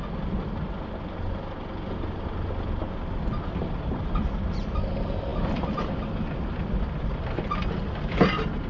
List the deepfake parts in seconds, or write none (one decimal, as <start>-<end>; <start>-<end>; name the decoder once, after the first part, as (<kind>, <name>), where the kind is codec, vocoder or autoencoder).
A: none